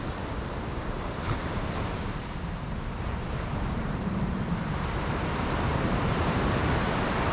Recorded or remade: remade